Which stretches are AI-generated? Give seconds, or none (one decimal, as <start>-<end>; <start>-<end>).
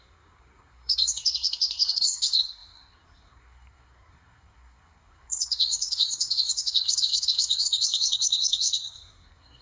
0.0-9.6